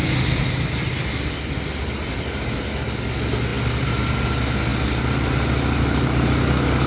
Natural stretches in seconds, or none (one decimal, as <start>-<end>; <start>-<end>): 0.0-6.9